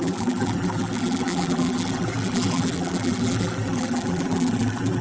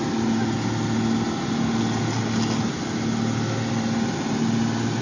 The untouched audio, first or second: second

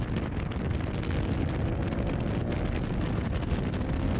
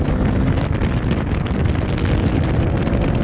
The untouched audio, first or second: first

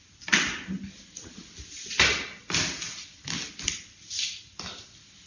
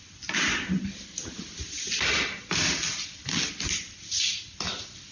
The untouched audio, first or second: first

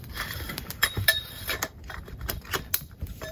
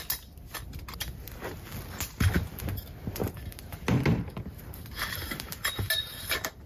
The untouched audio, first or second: second